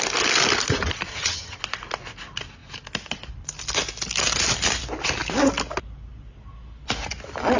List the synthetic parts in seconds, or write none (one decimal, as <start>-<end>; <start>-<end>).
1.1-1.6